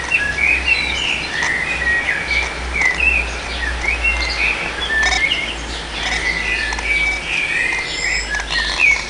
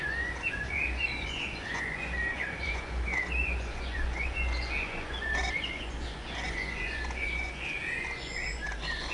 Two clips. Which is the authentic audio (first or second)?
first